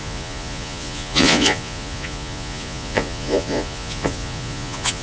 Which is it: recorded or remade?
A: remade